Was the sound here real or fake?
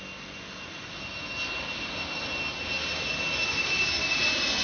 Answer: real